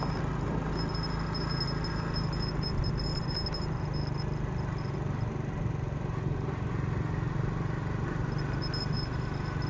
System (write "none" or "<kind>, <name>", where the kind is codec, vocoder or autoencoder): none